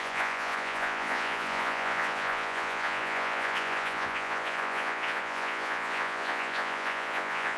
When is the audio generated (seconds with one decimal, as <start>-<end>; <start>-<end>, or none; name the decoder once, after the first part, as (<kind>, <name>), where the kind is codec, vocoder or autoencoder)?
0.0-7.6 (vocoder, Vocos)